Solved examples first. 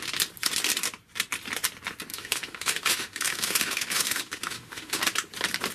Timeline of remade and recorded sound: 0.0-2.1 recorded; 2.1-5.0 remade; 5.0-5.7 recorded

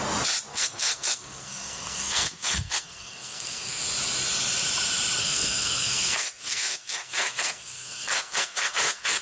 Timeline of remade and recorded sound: 0.0-0.5 recorded; 0.5-3.8 remade; 3.8-5.2 recorded; 5.2-9.2 remade

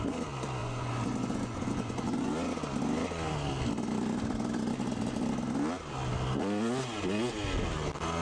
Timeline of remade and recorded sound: 0.0-0.6 recorded; 0.6-2.3 remade; 2.3-8.2 recorded

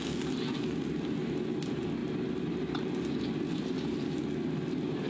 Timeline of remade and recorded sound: 0.0-5.1 recorded

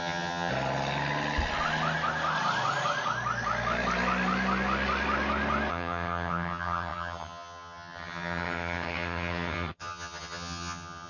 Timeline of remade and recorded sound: 0.0-0.5 remade; 0.5-5.7 recorded; 5.7-11.1 remade

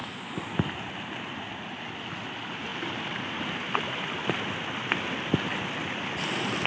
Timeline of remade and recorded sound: 0.0-6.7 recorded

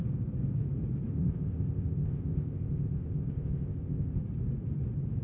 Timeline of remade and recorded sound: 0.0-1.1 recorded; 1.1-4.2 remade; 4.2-5.2 recorded

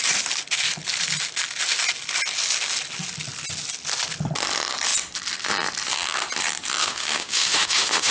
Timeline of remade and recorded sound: 0.0-6.8 recorded; 6.8-8.1 remade